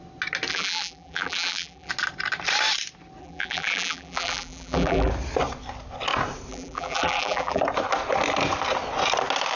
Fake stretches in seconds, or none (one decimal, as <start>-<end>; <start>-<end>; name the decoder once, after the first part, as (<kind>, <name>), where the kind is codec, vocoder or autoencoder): 0.5-1.9 (vocoder, BigVGAN v2); 3.2-5.1; 6.5-7.6

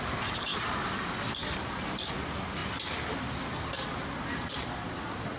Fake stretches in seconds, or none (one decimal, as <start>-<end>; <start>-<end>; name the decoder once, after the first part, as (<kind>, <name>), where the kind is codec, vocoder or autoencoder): 0.5-1.8 (vocoder, BigVGAN v2)

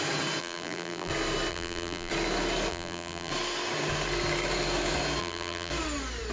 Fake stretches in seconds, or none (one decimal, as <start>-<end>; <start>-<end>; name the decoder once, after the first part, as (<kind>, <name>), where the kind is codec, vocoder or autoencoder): 0.4-1.1 (vocoder, BigVGAN v2); 1.5-2.1; 2.7-3.3; 5.2-5.7